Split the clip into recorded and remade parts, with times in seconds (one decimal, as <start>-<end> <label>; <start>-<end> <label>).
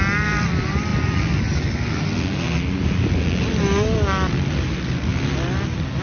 0.0-6.0 recorded